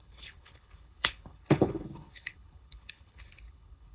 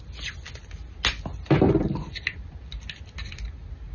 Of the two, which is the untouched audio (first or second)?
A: second